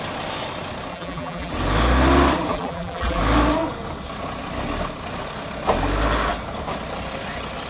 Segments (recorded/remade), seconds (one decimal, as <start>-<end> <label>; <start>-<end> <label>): 0.0-0.9 recorded; 0.9-1.5 remade; 1.5-2.5 recorded; 2.5-3.2 remade; 3.2-7.7 recorded